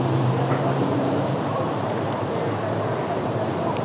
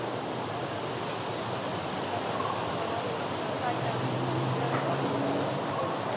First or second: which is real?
second